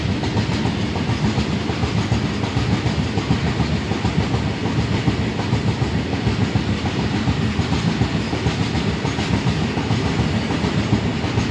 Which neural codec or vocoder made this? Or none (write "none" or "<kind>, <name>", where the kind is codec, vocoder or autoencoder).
none